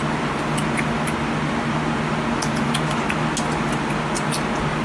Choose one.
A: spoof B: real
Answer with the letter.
B